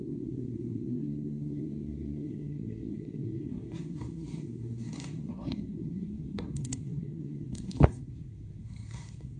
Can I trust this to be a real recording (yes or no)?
no